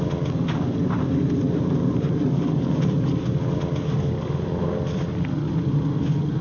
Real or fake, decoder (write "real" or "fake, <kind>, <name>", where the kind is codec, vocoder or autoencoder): real